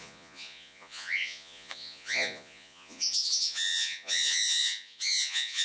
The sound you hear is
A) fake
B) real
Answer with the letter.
A